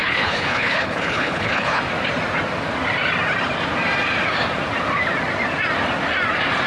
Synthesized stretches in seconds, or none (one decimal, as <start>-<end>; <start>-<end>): 0.0-1.8